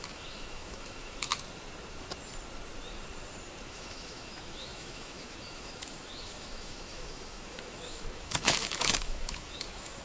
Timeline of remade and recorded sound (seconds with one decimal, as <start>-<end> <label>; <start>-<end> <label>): 0.0-1.3 remade; 1.3-3.7 recorded; 3.7-10.0 remade